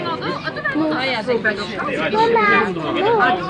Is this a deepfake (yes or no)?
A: no